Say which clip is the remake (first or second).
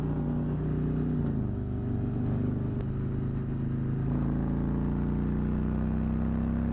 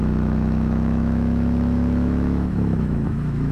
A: second